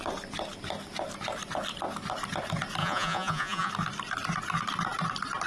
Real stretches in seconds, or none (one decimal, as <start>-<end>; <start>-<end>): 0.0-2.8; 3.7-5.5